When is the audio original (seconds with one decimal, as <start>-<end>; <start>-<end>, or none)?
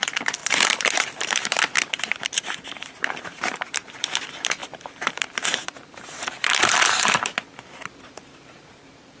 7.3-8.0